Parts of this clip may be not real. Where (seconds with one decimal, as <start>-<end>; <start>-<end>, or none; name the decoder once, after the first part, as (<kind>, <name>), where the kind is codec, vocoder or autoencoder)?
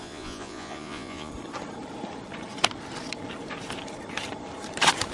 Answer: 0.0-1.3 (vocoder, Vocos)